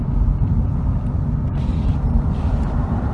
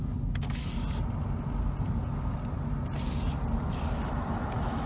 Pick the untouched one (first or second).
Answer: second